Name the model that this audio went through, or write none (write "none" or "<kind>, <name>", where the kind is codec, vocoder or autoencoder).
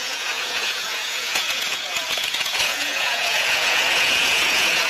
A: vocoder, Vocos